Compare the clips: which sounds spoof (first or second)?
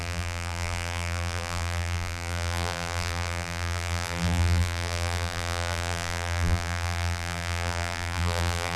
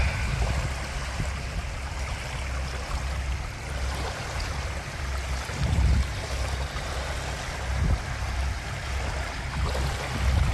first